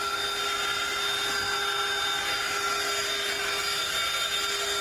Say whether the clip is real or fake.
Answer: real